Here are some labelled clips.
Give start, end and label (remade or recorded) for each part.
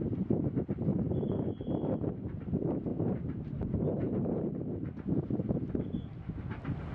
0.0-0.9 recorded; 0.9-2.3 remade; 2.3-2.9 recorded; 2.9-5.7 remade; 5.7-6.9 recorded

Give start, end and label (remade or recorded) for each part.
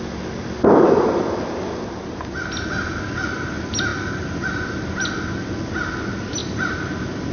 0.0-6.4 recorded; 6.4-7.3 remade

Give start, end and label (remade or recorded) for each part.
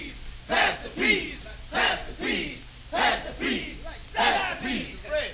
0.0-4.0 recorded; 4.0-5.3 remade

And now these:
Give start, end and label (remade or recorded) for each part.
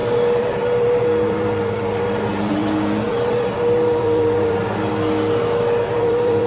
0.0-4.9 remade; 4.9-5.9 recorded; 5.9-6.5 remade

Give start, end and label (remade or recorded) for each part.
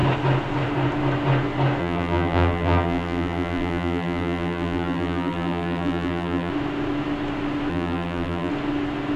0.0-1.8 recorded; 1.8-6.5 remade; 6.5-7.7 recorded; 7.7-8.5 remade; 8.5-9.2 recorded